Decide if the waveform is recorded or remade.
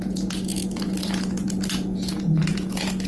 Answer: remade